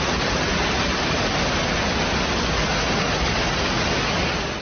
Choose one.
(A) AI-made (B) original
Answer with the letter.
B